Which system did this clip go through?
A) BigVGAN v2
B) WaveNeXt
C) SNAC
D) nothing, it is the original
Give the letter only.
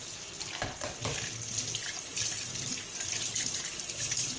D